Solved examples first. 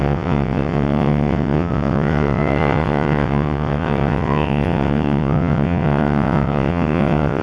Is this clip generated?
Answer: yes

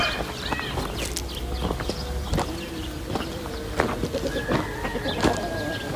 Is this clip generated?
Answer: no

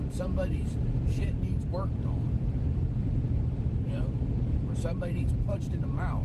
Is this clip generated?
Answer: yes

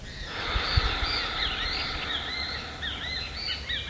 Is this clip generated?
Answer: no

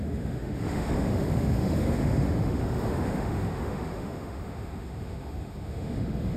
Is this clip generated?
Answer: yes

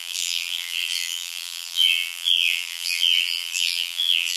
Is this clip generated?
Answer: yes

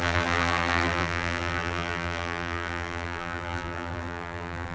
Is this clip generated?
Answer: yes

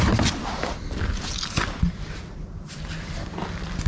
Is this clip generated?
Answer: yes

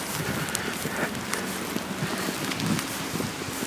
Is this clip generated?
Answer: no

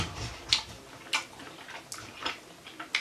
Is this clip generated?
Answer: no